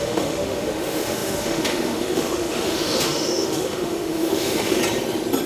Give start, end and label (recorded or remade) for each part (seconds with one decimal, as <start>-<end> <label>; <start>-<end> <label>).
0.0-4.8 remade; 4.8-5.5 recorded